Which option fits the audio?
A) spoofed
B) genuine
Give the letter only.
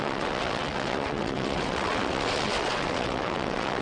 A